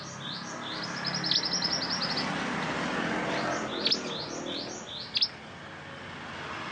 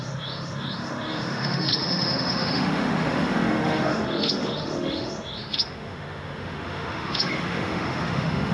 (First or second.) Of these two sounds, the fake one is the second